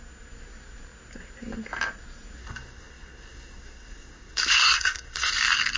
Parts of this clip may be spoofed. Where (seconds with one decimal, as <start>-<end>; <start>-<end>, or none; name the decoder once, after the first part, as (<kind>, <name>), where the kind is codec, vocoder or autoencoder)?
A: 2.4-5.3 (codec, SNAC)